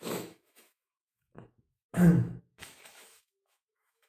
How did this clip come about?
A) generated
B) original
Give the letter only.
A